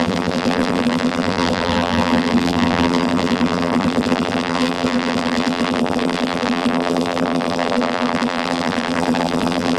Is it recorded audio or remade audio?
remade